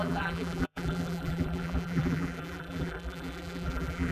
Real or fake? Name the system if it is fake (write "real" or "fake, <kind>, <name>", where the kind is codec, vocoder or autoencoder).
fake, vocoder, BigVGAN v2